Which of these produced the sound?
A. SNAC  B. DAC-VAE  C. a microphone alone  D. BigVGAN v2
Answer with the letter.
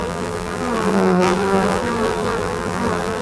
D